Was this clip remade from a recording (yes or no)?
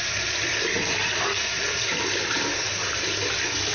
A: no